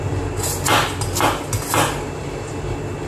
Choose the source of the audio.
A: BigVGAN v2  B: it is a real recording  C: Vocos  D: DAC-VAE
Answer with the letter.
B